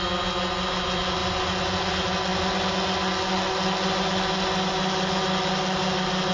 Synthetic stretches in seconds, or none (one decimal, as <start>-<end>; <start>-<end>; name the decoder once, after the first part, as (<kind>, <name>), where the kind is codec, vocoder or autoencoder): none